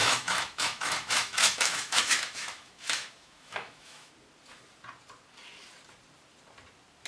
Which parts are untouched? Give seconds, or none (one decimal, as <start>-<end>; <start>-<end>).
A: 4.1-7.1